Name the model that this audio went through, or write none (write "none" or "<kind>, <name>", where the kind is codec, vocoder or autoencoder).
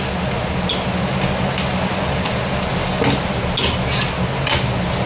none